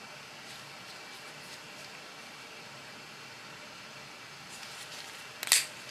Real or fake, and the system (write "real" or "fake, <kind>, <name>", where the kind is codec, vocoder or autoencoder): real